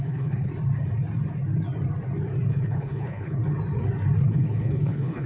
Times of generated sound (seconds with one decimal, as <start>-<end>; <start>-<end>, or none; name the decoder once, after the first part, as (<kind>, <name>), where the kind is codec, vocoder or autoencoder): 0.0-0.5 (codec, HILCodec); 2.5-3.4; 4.3-5.3